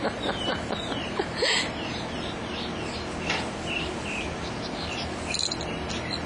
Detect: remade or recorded recorded